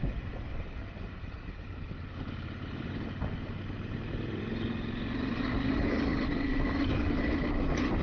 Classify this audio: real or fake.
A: fake